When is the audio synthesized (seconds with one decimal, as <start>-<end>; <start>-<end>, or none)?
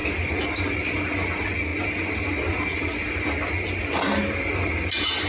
none